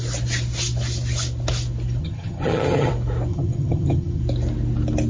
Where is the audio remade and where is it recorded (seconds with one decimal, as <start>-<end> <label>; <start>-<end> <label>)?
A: 0.0-2.0 recorded; 2.0-2.9 remade; 2.9-3.3 recorded; 3.3-4.2 remade; 4.2-5.1 recorded